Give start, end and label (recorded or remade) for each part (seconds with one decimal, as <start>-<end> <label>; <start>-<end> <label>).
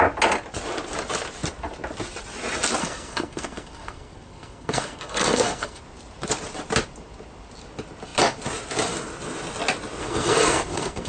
0.0-2.8 recorded; 2.8-5.8 remade; 5.8-10.0 recorded; 10.0-11.1 remade